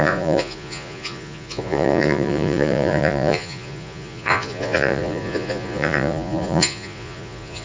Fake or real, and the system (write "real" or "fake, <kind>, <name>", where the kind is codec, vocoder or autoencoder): fake, vocoder, Vocos